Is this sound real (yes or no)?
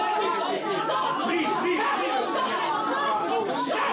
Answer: yes